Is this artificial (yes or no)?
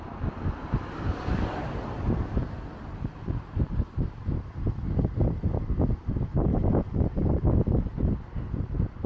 no